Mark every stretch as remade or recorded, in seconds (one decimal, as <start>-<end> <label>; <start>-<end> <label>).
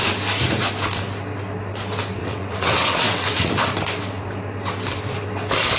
0.0-2.2 recorded; 2.2-3.5 remade; 3.5-5.8 recorded